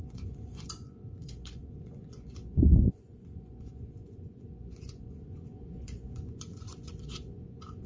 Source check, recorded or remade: remade